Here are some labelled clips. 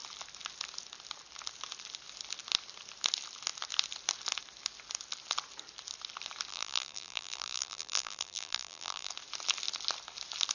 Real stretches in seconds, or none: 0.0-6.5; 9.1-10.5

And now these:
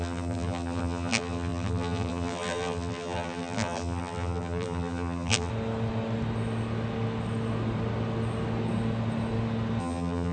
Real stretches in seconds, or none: 5.5-9.8

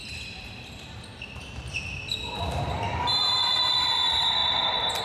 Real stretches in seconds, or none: 3.0-4.4

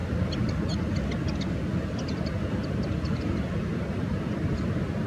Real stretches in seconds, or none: 0.0-5.1